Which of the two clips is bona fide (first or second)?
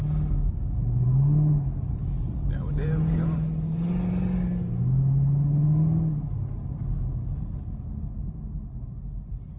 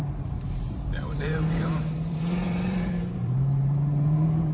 first